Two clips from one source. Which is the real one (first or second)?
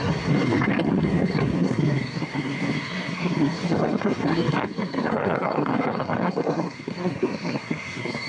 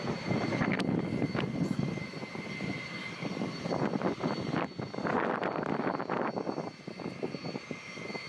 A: second